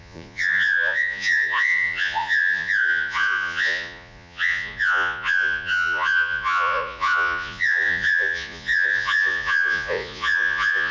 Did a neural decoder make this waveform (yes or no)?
yes